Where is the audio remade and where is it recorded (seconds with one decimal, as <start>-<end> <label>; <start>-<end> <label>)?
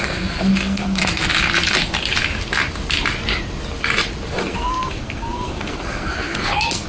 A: 0.0-1.0 remade; 1.0-4.4 recorded; 4.4-6.9 remade